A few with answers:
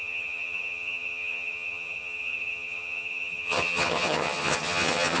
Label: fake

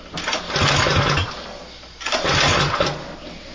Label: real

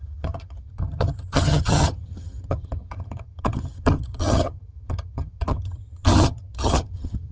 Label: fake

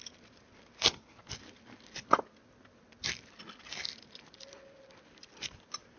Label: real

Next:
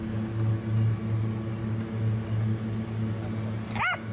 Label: real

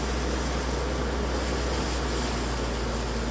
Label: real